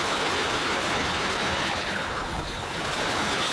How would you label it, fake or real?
fake